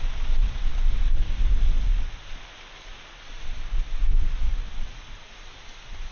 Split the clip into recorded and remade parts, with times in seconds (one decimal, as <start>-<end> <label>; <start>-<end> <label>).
0.0-6.1 recorded